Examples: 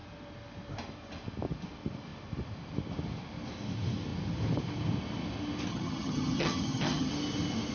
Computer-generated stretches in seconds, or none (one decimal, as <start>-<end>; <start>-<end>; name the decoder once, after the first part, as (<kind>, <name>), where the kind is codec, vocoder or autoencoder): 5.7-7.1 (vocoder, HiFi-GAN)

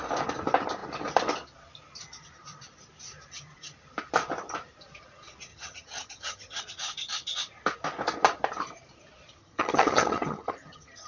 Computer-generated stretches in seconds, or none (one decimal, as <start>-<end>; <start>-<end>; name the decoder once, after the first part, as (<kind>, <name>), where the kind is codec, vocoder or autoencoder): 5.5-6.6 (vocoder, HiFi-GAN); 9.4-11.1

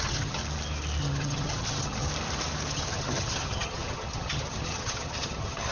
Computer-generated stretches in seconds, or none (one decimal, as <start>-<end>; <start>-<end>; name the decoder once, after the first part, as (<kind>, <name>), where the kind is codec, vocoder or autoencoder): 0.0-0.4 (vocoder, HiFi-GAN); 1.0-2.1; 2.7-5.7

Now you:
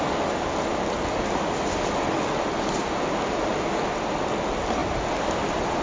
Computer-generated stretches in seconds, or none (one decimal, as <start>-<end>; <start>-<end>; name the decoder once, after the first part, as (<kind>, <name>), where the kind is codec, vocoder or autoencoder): none

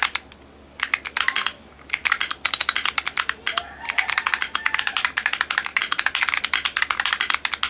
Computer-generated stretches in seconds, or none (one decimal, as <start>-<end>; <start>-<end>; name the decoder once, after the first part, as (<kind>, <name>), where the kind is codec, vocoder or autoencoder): none

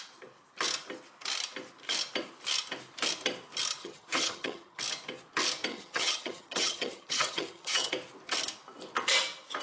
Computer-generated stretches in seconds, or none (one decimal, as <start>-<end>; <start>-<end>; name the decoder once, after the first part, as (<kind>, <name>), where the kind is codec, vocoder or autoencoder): 3.8-4.8 (vocoder, HiFi-GAN); 5.7-7.9